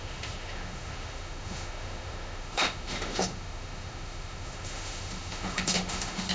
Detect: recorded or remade remade